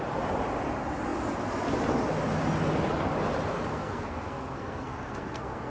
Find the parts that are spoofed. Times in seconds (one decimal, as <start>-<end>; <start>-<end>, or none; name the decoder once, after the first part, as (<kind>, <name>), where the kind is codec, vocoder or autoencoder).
3.7-5.7 (codec, SNAC)

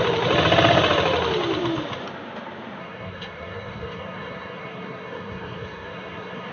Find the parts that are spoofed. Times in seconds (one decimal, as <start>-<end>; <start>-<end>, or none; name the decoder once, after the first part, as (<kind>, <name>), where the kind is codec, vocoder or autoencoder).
2.8-6.5 (codec, SNAC)

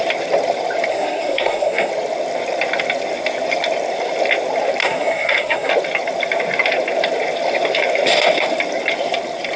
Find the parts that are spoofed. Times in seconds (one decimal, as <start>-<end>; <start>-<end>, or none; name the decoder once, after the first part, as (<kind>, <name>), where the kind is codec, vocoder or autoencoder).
0.9-1.9 (codec, SNAC); 4.8-5.7

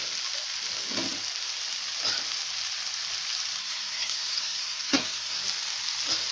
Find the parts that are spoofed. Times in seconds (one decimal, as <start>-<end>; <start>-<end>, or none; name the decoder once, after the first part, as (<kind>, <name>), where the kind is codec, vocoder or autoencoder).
3.6-5.4 (codec, SNAC)